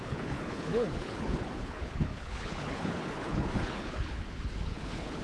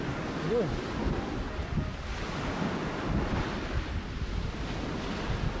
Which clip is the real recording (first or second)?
second